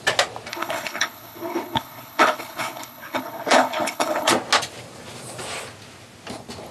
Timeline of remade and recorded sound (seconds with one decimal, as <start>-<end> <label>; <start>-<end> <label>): 0.0-0.5 recorded; 0.5-4.3 remade; 4.3-6.7 recorded